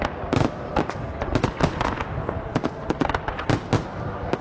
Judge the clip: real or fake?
real